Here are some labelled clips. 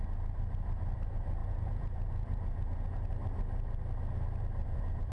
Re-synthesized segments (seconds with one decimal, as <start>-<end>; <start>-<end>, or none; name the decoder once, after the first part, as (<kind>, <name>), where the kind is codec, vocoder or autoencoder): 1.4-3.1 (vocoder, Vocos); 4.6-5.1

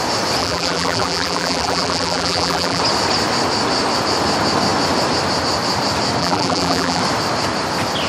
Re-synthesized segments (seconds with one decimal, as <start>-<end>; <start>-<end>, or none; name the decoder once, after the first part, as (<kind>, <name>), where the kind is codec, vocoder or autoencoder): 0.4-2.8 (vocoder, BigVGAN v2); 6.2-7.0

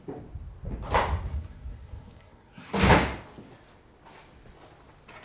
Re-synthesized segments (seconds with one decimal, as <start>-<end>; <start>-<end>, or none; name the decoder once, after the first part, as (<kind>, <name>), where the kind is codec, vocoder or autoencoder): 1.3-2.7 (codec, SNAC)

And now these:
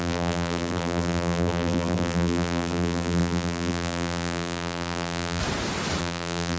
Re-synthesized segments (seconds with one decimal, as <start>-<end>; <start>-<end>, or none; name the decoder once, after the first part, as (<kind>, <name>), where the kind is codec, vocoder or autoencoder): 0.0-5.4 (vocoder, BigVGAN v2); 6.0-6.6

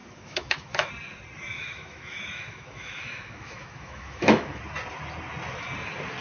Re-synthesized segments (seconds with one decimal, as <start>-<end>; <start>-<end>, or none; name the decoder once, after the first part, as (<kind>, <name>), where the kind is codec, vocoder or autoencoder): 0.0-0.9 (autoencoder, DAC-VAE); 1.5-4.6